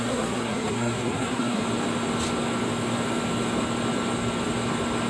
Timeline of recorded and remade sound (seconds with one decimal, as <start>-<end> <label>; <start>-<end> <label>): 0.0-1.6 remade; 1.6-5.1 recorded